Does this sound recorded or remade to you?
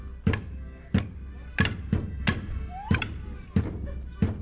recorded